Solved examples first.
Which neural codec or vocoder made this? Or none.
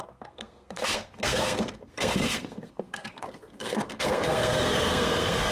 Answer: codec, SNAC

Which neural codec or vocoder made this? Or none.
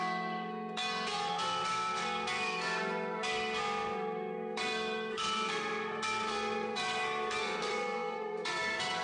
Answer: codec, SNAC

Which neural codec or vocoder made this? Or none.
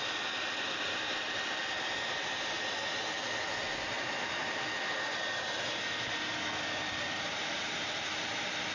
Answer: none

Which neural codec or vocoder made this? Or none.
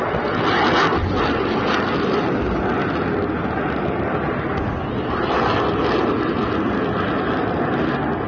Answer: none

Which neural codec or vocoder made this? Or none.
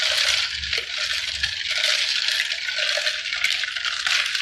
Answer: none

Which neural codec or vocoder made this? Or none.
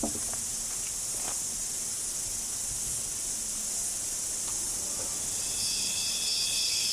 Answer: none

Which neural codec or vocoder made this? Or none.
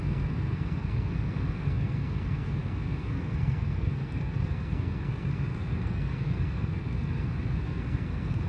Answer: codec, SNAC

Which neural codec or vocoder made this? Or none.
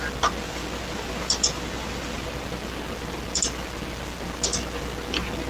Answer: none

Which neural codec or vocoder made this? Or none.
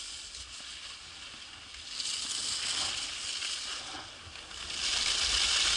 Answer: none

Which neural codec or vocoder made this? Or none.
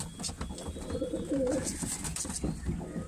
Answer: none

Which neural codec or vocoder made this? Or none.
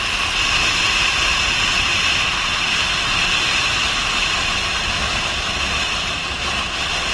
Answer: none